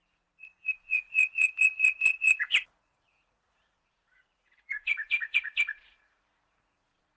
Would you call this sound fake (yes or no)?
yes